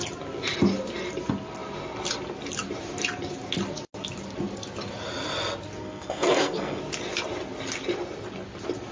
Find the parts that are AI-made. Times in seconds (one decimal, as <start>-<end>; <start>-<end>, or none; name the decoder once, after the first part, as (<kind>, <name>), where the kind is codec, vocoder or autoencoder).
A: 5.8-6.8 (codec, SNAC)